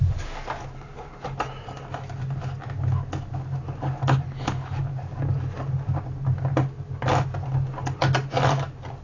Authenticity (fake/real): real